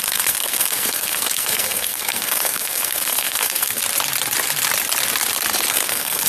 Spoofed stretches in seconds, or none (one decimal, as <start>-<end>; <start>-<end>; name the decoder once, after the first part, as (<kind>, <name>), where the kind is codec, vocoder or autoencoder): 0.0-3.8 (codec, SNAC); 5.7-6.3